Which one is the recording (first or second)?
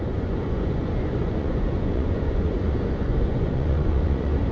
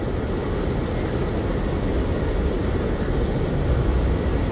second